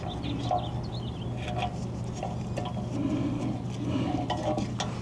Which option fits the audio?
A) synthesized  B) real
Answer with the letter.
B